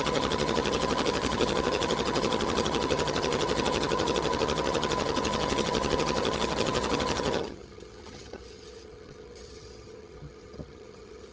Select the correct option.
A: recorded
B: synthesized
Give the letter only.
B